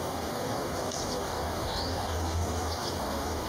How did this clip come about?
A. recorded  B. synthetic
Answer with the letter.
B